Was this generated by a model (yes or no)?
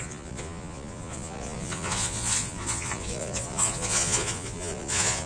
yes